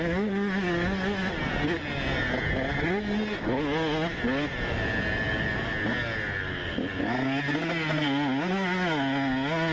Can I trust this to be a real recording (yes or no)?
yes